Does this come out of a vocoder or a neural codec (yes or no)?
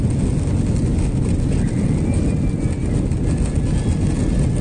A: no